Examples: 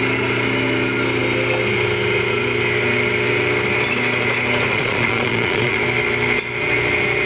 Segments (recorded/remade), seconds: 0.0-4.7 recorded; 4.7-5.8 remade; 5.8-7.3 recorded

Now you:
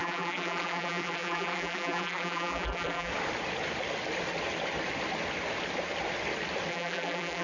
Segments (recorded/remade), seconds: 0.0-3.1 remade; 3.1-6.7 recorded; 6.7-7.4 remade

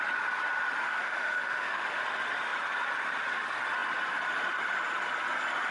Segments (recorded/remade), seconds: 0.0-0.8 recorded; 0.8-2.0 remade; 2.0-5.7 recorded

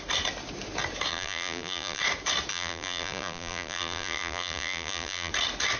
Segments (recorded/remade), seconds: 0.0-1.1 recorded; 1.1-2.0 remade; 2.0-2.5 recorded; 2.5-5.3 remade; 5.3-5.8 recorded